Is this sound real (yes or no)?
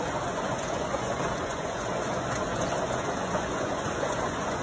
no